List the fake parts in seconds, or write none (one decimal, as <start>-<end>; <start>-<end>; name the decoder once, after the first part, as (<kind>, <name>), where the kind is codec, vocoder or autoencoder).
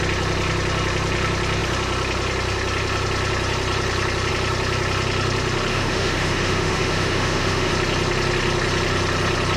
5.7-7.7 (autoencoder, DAC-VAE)